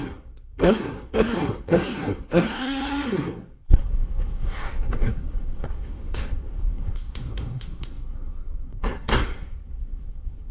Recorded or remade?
remade